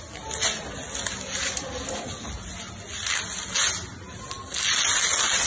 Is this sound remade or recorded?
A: recorded